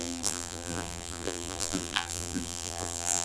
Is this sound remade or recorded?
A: remade